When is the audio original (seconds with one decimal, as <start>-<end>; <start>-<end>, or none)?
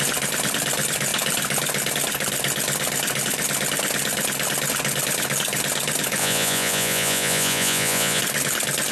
0.0-6.2; 8.2-8.9